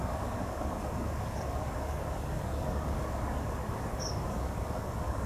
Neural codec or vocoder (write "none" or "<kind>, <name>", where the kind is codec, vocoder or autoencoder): codec, DAC